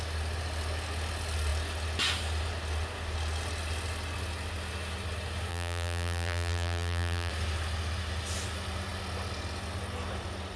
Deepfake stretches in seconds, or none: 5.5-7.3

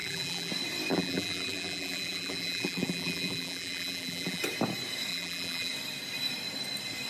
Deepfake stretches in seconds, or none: 0.0-0.5; 0.9-4.4; 5.1-5.7

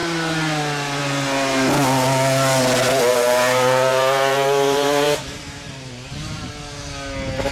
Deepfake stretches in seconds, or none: 3.1-6.5

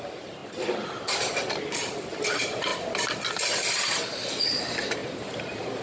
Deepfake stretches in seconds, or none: 0.0-0.4; 1.5-2.7; 4.6-5.8

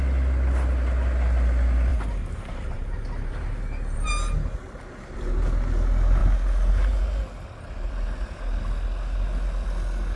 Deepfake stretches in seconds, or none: 1.9-4.1

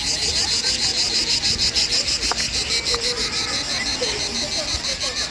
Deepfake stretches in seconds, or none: none

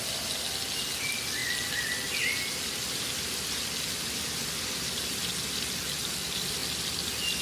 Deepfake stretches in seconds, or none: none

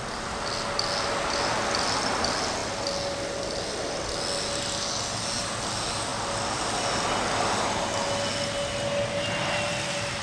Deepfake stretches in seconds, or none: none